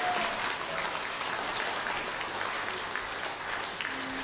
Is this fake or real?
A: real